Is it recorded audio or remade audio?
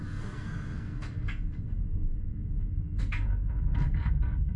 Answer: remade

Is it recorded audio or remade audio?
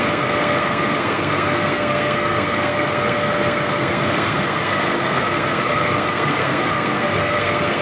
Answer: remade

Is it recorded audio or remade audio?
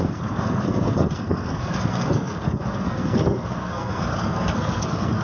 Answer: remade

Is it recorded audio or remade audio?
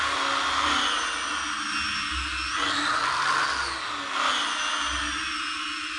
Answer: recorded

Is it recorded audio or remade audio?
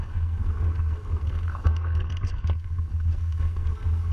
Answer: remade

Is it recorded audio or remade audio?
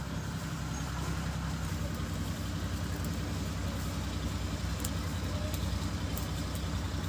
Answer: recorded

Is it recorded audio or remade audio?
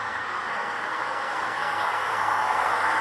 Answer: remade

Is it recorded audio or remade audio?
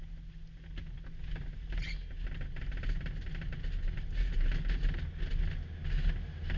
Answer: recorded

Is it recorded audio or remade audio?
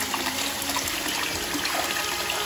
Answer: recorded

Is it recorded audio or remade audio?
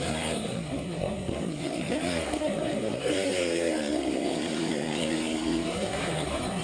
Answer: remade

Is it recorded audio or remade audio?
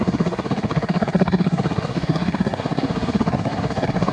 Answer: remade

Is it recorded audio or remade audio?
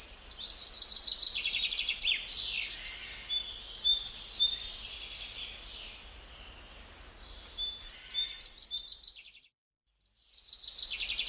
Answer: recorded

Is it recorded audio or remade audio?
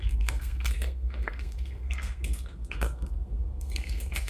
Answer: remade